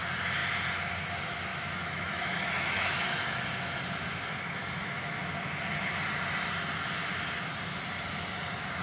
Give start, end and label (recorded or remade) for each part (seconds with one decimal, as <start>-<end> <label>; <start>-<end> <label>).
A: 0.0-1.5 recorded; 1.5-3.4 remade; 3.4-4.6 recorded; 4.6-5.2 remade; 5.2-8.8 recorded